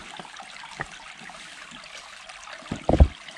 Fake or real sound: real